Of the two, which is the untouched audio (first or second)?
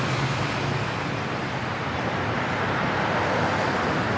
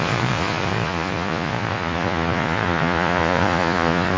first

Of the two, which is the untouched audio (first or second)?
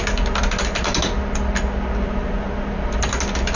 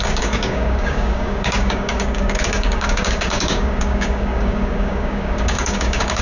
first